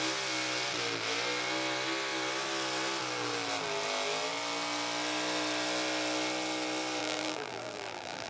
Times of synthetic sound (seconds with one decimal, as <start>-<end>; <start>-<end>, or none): 7.0-8.3